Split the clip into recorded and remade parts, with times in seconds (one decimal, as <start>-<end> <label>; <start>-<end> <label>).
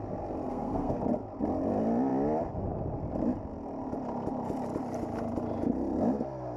0.0-0.5 recorded; 0.5-1.0 remade; 1.0-6.6 recorded